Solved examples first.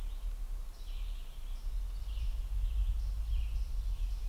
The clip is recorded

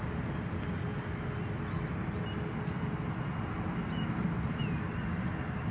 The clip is recorded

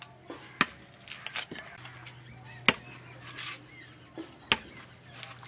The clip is recorded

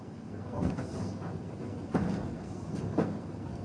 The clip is remade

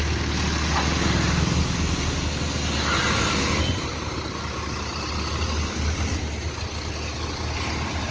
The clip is recorded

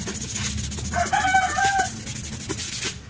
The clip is recorded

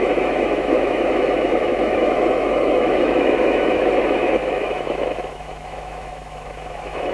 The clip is remade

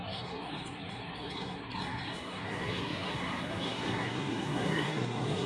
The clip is remade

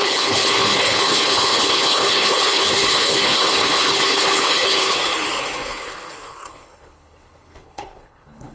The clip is remade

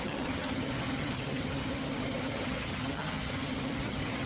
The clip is remade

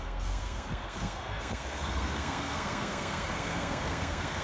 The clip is remade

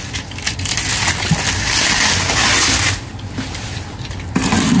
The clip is recorded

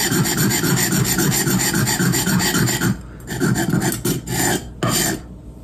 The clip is recorded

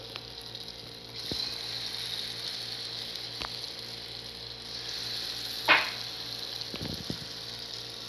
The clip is recorded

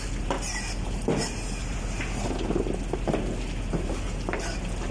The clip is recorded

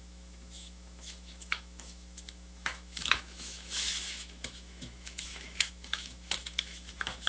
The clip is remade